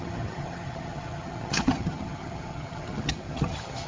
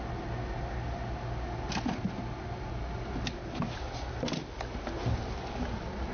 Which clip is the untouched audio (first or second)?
second